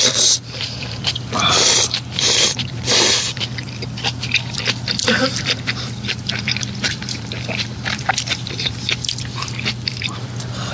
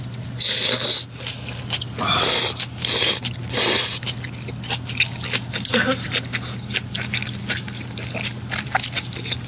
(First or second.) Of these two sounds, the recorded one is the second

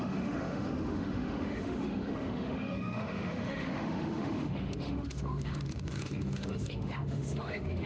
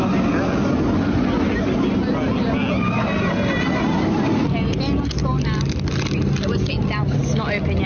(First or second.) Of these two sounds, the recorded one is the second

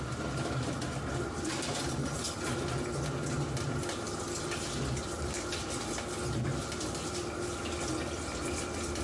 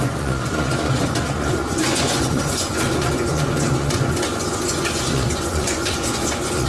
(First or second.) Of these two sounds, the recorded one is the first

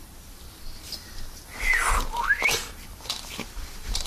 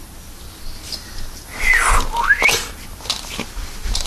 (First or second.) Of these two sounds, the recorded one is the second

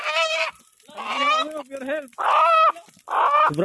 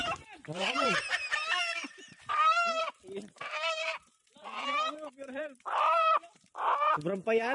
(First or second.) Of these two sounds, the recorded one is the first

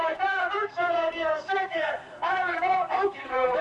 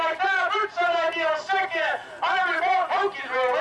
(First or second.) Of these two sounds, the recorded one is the second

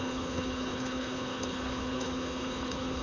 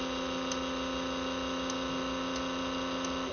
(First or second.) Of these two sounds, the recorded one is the second